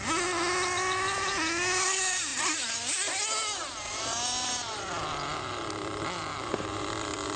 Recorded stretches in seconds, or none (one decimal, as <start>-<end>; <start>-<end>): 0.0-6.3; 6.9-7.4